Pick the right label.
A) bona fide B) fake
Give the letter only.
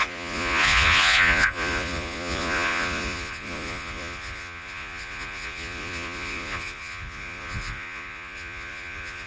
B